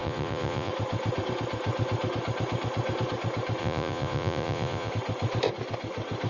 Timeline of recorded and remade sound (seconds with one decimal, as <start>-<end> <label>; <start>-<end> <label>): 0.0-0.7 remade; 0.7-3.6 recorded; 3.6-4.9 remade; 4.9-6.3 recorded